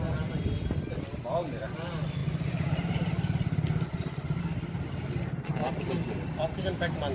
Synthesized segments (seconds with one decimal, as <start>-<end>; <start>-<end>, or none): none